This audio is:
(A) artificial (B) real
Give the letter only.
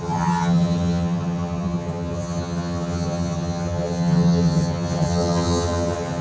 A